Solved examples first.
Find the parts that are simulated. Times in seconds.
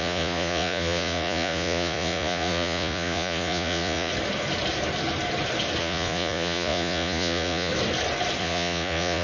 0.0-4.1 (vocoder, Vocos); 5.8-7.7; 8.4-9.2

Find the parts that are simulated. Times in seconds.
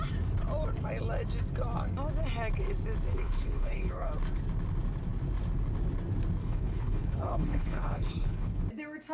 3.1-4.1 (codec, HILCodec); 6.4-8.6